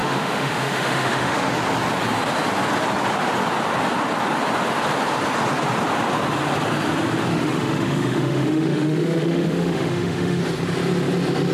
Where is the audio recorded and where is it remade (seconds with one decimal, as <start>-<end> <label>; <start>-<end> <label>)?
0.0-1.5 remade; 1.5-7.3 recorded; 7.3-10.4 remade; 10.4-11.5 recorded